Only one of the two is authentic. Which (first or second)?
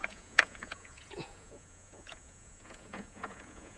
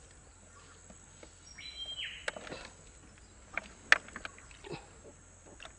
second